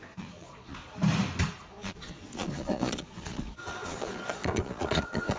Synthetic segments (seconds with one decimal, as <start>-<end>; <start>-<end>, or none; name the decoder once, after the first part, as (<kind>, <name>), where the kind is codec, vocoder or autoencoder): 0.0-0.8 (vocoder, Vocos); 1.7-5.4